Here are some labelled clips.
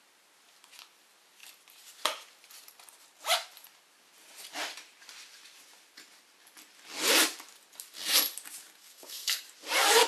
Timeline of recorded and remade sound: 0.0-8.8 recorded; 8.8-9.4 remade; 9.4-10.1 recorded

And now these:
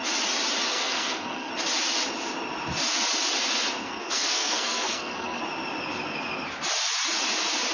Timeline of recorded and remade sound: 0.0-0.7 recorded; 0.7-1.5 remade; 1.5-3.8 recorded; 3.8-5.4 remade; 5.4-7.7 recorded

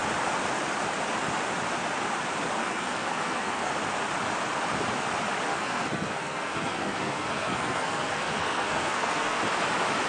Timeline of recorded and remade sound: 0.0-2.6 recorded; 2.6-3.7 remade; 3.7-5.5 recorded; 5.5-9.4 remade; 9.4-10.1 recorded

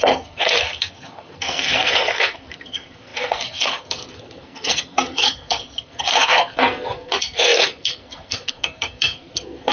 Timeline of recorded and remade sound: 0.0-9.7 remade

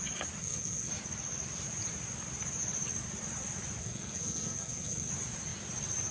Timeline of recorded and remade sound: 0.0-0.4 recorded; 0.4-0.9 remade; 0.9-3.8 recorded; 3.8-5.1 remade; 5.1-6.1 recorded

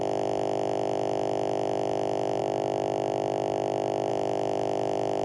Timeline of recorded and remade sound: 0.0-5.2 recorded